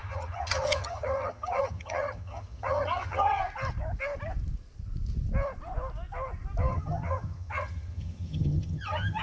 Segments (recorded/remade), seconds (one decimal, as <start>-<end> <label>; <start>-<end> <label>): 0.0-3.4 remade; 3.4-6.7 recorded; 6.7-9.2 remade